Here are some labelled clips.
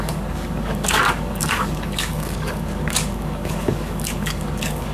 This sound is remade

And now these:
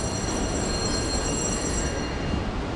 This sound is recorded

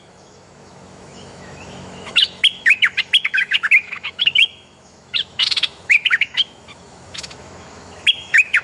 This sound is remade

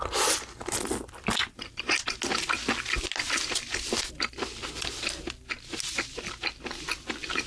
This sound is recorded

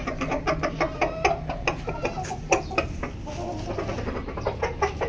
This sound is recorded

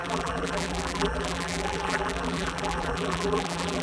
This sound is remade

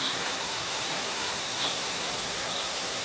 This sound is remade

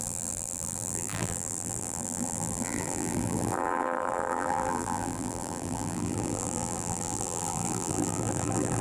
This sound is remade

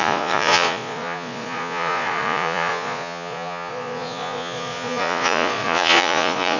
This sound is remade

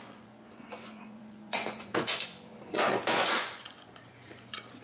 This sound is remade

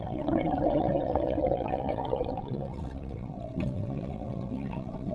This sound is remade